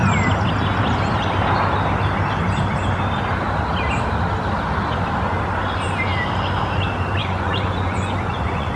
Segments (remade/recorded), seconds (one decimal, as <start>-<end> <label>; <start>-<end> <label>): 0.0-7.2 recorded; 7.2-8.8 remade